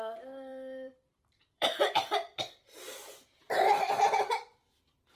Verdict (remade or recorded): remade